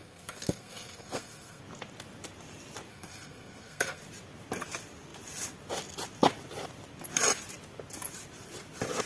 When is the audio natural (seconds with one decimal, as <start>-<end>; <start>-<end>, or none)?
1.6-2.9; 4.0-9.1